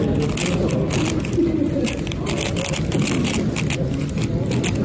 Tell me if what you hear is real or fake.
real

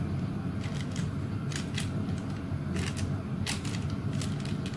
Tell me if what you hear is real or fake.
real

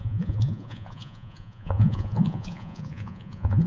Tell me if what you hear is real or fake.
fake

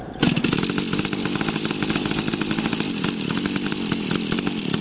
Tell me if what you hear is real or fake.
real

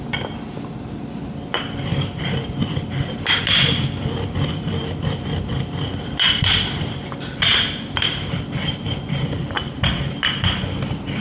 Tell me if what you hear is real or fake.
real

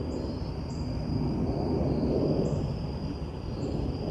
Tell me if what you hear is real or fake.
real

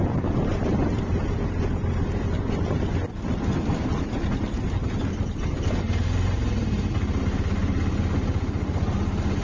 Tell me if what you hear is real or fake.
real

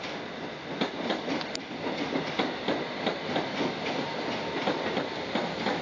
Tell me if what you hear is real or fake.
real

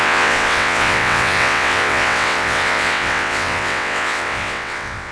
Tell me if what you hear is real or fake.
fake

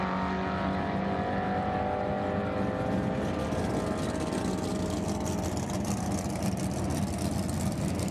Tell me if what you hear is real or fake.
real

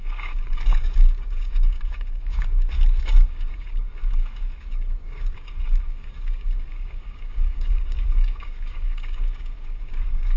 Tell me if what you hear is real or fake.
fake